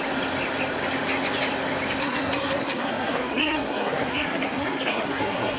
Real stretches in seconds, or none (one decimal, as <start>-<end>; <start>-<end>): 0.0-2.0